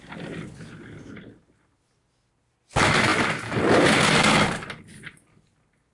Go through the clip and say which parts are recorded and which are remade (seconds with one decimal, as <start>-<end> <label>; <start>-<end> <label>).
0.0-5.9 recorded